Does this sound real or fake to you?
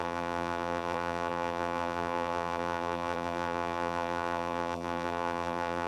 fake